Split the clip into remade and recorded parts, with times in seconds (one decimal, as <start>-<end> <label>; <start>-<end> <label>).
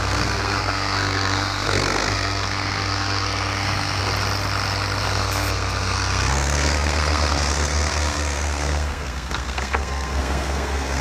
0.0-4.0 remade; 4.0-5.0 recorded; 5.0-11.0 remade